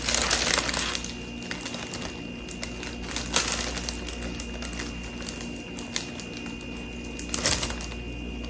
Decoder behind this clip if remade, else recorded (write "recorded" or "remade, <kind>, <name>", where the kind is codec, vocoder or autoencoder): recorded